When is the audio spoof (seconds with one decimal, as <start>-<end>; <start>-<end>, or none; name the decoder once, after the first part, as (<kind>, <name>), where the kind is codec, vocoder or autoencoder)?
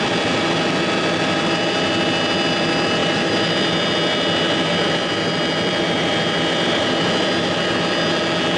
none